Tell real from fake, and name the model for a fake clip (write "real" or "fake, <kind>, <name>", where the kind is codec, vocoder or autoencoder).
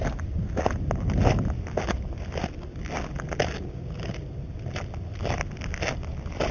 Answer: real